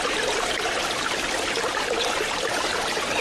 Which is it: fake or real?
real